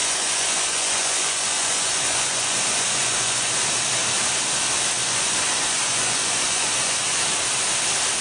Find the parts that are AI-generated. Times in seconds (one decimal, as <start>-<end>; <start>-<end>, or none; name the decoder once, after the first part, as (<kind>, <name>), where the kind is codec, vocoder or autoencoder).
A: 0.0-3.5 (vocoder, Vocos); 5.0-7.2